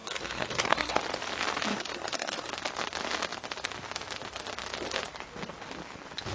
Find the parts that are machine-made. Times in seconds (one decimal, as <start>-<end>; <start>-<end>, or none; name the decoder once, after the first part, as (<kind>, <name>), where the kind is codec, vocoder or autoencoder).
0.0-1.0 (codec, SNAC); 1.7-2.5